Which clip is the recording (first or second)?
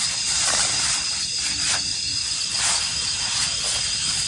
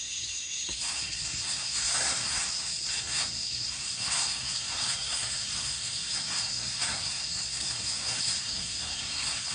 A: first